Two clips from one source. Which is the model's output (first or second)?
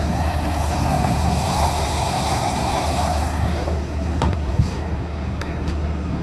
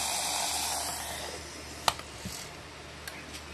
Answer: first